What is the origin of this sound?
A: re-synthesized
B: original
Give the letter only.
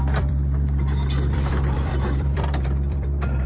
A